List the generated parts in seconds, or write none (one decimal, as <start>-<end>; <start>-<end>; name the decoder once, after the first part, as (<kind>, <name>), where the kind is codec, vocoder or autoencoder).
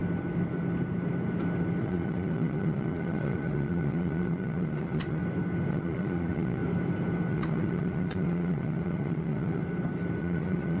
1.8-5.2 (vocoder, Vocos); 5.7-6.6; 7.3-9.6; 10.2-10.8